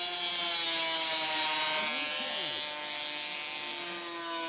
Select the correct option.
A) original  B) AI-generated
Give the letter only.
A